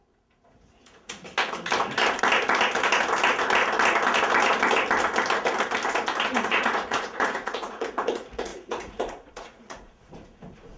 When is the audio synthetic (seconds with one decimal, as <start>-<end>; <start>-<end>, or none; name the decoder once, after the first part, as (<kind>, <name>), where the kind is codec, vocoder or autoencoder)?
0.0-1.3 (vocoder, Vocos); 6.3-10.8